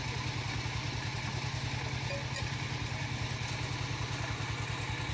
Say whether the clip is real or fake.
real